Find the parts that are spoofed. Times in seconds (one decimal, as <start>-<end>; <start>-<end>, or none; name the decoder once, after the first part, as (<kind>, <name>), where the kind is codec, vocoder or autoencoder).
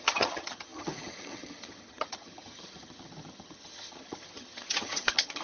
0.0-5.4 (vocoder, HiFi-GAN)